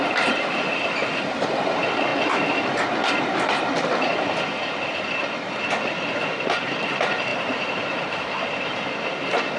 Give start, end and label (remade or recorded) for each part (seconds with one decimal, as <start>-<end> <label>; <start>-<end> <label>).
0.0-2.1 remade; 2.1-3.2 recorded; 3.2-4.1 remade; 4.1-6.0 recorded; 6.0-9.6 remade